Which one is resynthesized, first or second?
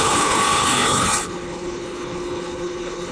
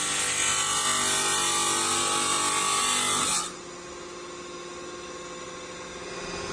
first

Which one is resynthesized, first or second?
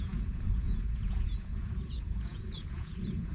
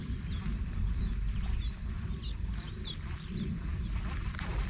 first